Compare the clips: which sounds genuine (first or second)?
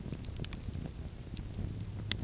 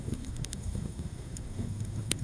first